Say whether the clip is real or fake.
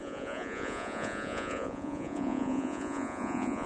fake